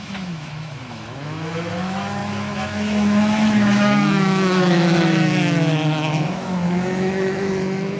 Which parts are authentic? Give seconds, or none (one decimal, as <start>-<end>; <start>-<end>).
none